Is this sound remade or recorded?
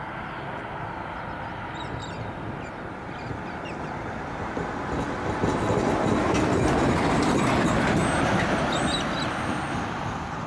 recorded